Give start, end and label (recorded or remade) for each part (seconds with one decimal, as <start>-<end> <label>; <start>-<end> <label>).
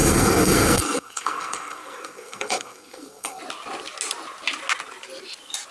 0.0-3.4 remade; 3.4-5.7 recorded